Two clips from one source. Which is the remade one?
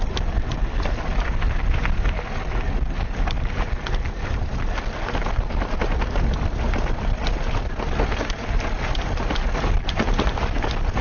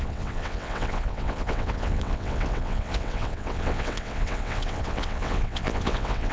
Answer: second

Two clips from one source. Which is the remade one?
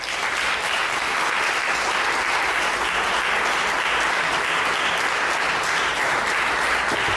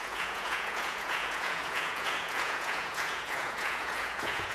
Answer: second